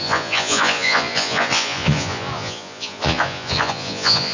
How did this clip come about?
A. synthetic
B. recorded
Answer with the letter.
A